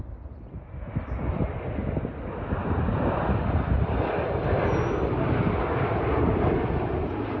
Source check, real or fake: real